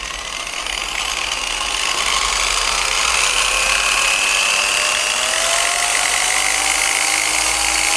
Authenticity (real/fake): real